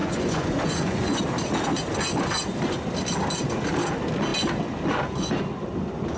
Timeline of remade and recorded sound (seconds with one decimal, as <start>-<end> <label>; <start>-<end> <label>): 0.0-1.2 remade; 1.2-6.2 recorded